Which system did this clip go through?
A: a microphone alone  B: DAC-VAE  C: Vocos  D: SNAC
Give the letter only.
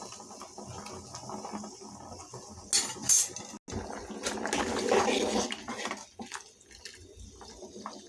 A